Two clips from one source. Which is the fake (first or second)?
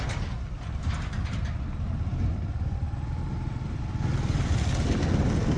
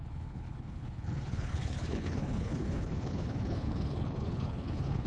second